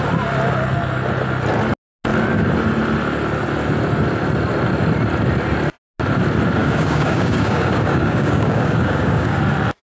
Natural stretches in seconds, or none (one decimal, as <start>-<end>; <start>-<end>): 0.0-6.6; 9.4-9.9

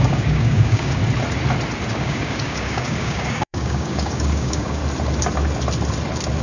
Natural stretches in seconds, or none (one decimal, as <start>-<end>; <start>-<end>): 1.0-1.9; 4.8-6.4

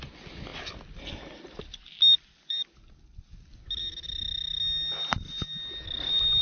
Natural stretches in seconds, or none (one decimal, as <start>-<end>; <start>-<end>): 0.0-6.4

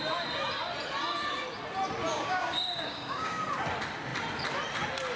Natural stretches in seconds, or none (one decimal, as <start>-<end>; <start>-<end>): 0.0-2.1; 3.4-5.2